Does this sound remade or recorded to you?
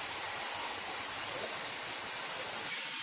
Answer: recorded